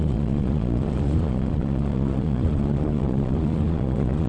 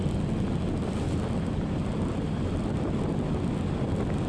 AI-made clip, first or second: first